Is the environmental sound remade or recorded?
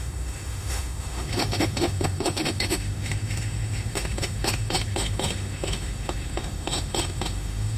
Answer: remade